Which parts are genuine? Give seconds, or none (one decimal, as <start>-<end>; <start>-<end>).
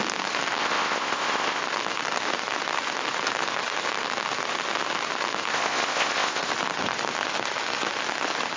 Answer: 0.0-0.6; 1.6-5.5; 6.5-8.6